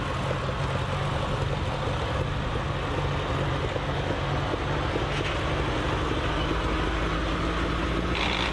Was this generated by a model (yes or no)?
no